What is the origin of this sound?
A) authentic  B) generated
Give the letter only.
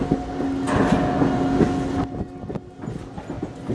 A